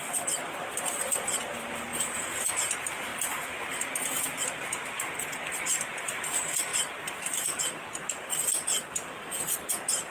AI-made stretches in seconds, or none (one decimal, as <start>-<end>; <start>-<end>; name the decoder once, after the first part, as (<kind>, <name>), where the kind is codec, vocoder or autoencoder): 1.9-2.5 (vocoder, Vocos)